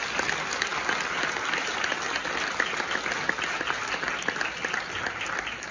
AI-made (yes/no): no